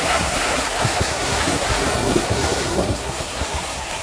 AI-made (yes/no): yes